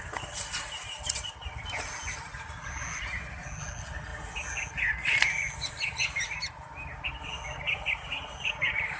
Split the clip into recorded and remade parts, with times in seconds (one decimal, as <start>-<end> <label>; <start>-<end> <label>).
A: 0.0-9.0 recorded